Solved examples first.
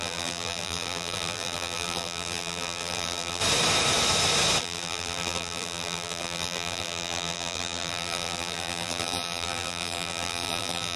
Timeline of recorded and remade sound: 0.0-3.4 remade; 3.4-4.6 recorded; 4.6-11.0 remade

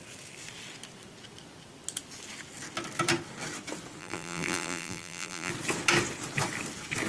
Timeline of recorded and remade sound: 0.0-4.0 recorded; 4.0-5.5 remade; 5.5-7.1 recorded

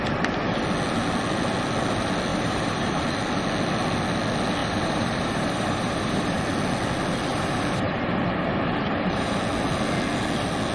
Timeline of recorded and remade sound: 0.0-2.3 recorded; 2.3-3.0 remade; 3.0-4.6 recorded; 4.6-6.4 remade; 6.4-7.3 recorded; 7.3-9.4 remade; 9.4-10.7 recorded

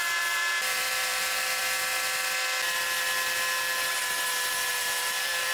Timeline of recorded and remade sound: 0.0-1.6 remade; 1.6-4.7 recorded; 4.7-5.5 remade

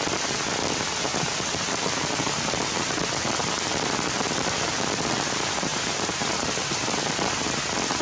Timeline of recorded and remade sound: 0.0-5.7 recorded; 5.7-6.6 remade; 6.6-8.0 recorded